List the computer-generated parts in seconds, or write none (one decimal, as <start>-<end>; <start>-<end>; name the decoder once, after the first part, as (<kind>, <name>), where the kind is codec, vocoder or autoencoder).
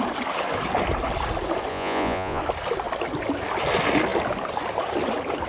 1.7-2.4 (vocoder, Vocos)